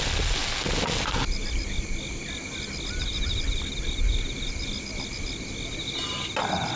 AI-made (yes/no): no